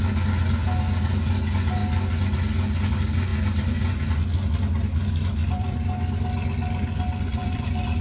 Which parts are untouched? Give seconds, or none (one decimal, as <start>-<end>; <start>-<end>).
0.0-5.4; 6.0-7.3

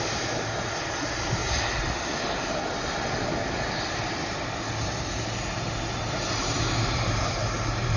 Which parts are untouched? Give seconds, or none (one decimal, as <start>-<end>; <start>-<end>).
1.4-6.1

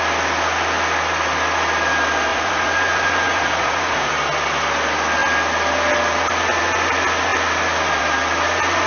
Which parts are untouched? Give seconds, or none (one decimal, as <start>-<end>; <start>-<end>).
0.0-2.3; 4.1-8.9

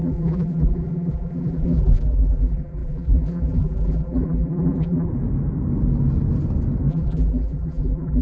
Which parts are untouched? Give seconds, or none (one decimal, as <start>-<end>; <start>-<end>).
5.1-6.9

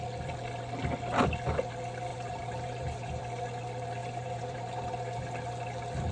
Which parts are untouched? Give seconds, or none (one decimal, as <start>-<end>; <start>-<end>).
0.0-2.1; 3.2-4.0; 5.2-6.1

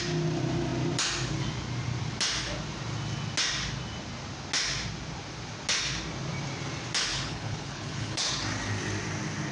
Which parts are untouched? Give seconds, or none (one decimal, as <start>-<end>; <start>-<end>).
0.0-7.1; 8.3-9.5

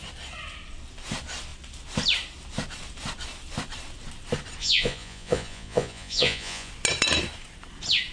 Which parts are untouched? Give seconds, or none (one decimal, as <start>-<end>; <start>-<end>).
0.0-4.6; 6.7-8.1